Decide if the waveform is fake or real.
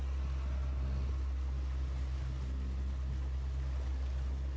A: real